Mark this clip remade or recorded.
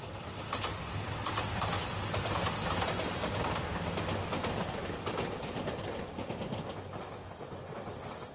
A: recorded